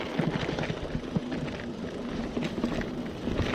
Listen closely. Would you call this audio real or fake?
real